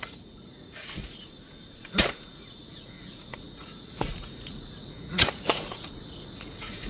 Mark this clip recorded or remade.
remade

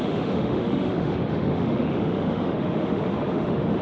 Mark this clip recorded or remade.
remade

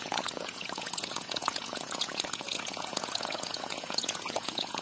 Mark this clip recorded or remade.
remade